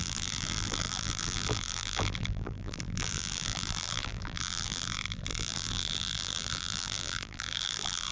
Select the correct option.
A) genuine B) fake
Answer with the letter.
B